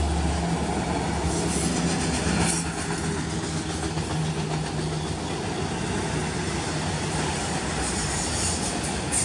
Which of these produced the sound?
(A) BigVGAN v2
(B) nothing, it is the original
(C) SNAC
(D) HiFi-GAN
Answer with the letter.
B